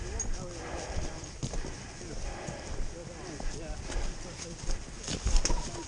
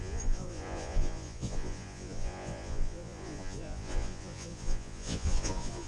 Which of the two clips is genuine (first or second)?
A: first